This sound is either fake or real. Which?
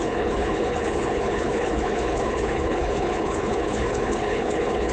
fake